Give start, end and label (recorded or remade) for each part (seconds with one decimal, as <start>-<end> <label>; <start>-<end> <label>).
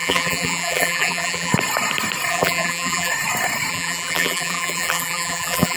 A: 0.0-1.5 remade; 1.5-2.3 recorded; 2.3-3.1 remade; 3.1-3.7 recorded; 3.7-5.8 remade